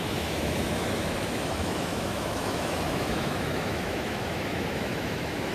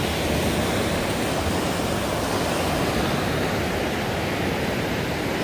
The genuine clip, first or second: second